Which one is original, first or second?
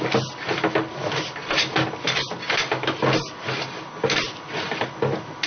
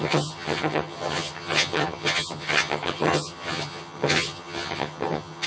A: first